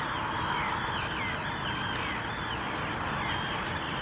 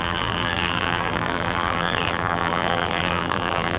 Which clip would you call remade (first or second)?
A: second